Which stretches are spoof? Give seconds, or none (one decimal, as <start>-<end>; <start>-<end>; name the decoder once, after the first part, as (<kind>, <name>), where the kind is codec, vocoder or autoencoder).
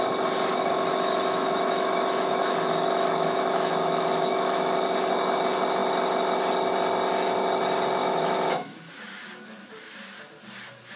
0.5-4.8 (autoencoder, DAC-VAE); 8.0-8.9